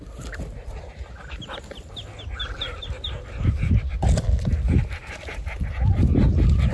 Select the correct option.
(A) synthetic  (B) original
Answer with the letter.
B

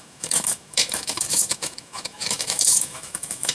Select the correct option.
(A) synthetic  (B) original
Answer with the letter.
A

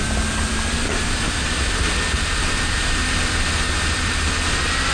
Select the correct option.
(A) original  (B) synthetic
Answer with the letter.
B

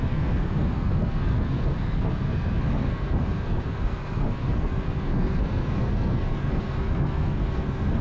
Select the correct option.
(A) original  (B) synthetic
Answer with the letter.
B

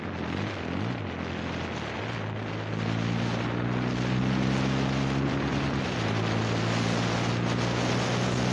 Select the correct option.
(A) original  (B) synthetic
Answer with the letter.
A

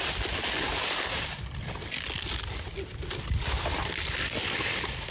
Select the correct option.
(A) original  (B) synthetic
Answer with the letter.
A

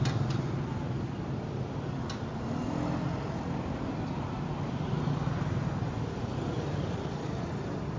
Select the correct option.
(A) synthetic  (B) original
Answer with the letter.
B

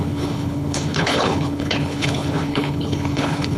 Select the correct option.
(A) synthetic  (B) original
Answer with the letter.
A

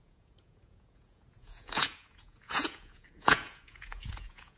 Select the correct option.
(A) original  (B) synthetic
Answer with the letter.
B